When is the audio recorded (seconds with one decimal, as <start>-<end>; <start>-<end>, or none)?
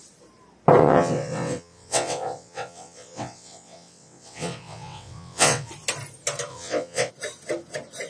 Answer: 0.0-0.8; 5.7-6.5; 7.1-8.1